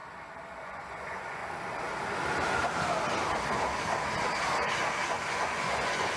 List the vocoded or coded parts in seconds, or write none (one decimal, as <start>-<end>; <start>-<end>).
0.6-1.4; 5.1-6.2